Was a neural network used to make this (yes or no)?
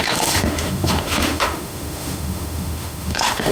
yes